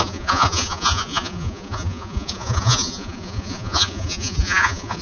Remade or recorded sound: remade